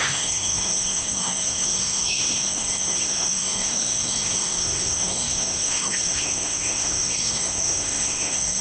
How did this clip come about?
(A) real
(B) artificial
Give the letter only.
B